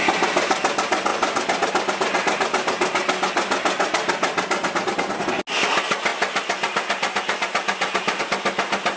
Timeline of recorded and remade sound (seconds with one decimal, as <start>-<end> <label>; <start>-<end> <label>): 0.0-9.0 recorded